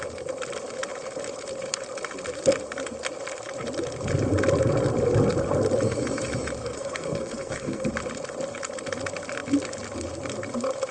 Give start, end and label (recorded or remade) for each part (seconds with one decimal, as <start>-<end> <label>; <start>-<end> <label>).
0.0-6.6 recorded; 6.6-7.9 remade; 7.9-10.9 recorded